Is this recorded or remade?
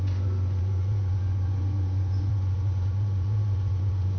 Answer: remade